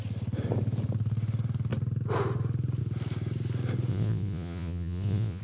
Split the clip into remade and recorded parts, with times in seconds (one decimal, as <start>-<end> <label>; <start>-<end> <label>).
0.0-3.9 recorded; 3.9-5.4 remade